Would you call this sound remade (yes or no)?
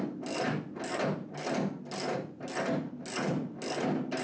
no